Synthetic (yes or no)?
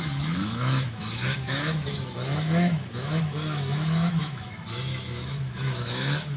yes